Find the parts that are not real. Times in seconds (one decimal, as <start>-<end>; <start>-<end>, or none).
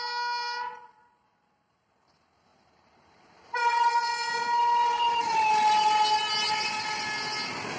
2.5-3.7; 6.4-7.0